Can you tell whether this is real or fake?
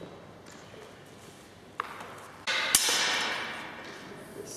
real